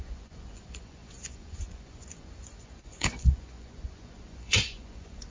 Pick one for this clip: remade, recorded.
remade